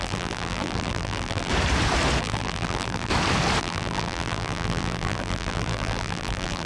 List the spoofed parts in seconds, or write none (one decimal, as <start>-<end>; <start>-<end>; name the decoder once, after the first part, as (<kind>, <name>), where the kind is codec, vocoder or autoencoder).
0.0-1.5 (vocoder, BigVGAN v2); 2.2-3.1; 3.6-6.7